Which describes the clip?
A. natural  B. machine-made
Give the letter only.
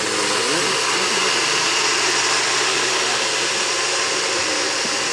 A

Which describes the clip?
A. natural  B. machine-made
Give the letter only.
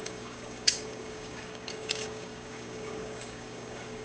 B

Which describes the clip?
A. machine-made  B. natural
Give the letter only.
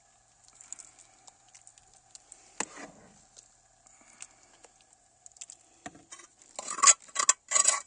B